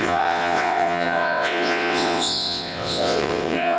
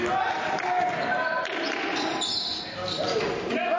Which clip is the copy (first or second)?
first